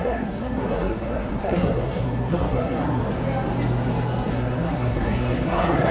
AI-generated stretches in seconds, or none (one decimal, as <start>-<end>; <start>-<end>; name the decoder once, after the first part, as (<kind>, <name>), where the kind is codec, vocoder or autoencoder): 0.0-3.0 (codec, SNAC); 4.3-5.9

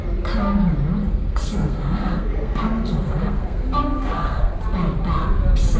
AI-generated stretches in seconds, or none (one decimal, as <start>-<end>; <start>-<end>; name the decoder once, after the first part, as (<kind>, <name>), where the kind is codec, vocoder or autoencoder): 1.0-4.5 (codec, SNAC)

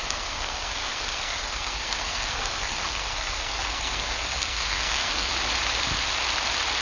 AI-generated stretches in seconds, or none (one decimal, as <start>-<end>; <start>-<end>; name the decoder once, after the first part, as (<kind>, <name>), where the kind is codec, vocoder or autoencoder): 0.0-5.3 (codec, SNAC)